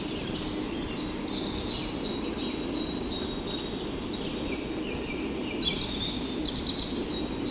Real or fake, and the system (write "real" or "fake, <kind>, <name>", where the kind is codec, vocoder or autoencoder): real